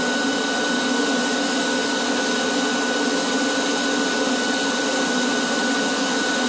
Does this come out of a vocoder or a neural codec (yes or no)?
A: no